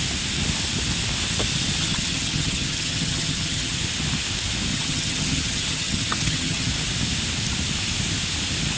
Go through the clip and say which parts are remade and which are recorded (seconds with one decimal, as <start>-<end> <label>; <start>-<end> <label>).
0.0-1.8 recorded; 1.8-3.7 remade; 3.7-4.7 recorded; 4.7-6.7 remade; 6.7-8.8 recorded